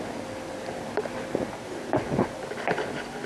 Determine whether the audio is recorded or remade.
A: recorded